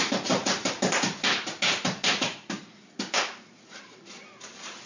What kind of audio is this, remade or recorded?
recorded